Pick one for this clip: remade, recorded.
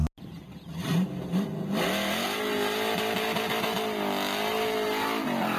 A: recorded